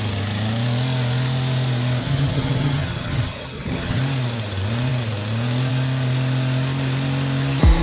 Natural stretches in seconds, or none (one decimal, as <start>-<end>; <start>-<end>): 0.0-2.0; 4.0-7.8